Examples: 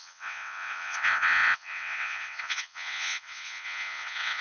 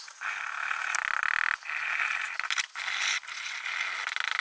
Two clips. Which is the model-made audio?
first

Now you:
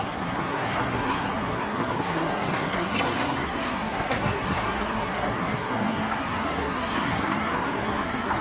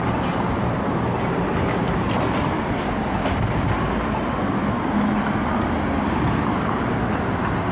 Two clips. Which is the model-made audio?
first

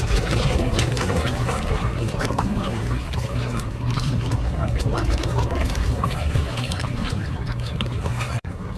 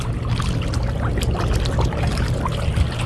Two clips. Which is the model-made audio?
first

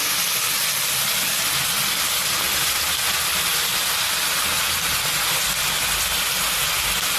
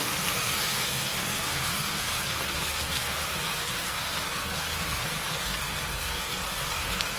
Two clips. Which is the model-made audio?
second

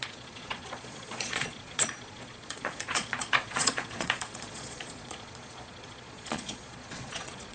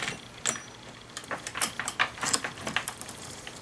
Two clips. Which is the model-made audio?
first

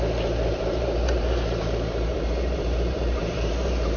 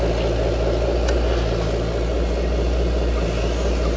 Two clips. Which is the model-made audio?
first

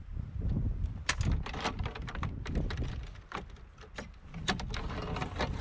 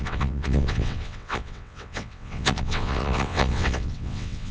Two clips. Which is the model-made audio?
second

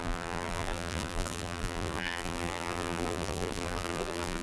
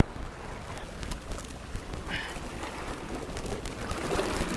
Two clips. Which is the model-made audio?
first